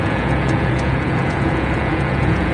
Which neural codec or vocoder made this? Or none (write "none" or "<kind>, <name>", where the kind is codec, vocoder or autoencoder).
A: vocoder, Vocos